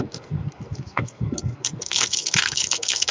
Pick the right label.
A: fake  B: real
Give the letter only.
A